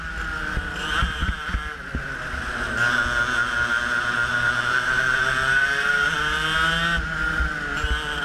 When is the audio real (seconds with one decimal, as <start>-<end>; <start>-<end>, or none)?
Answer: 0.0-4.3; 6.2-8.2